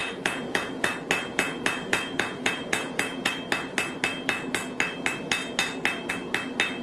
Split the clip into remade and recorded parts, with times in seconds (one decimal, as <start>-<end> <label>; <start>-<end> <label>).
0.0-0.9 remade; 0.9-1.3 recorded; 1.3-3.3 remade; 3.3-6.8 recorded